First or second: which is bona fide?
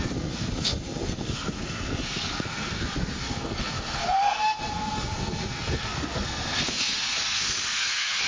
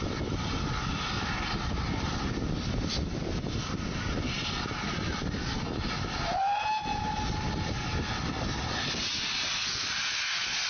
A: second